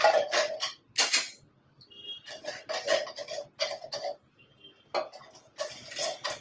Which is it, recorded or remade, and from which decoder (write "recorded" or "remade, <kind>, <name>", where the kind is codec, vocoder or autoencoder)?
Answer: recorded